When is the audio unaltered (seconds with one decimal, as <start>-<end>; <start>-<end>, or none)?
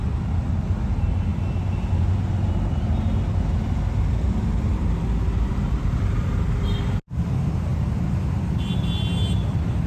0.0-9.9